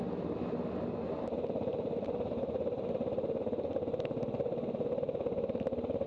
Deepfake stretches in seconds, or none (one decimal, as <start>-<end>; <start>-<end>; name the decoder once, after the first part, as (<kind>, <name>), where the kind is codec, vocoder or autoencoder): none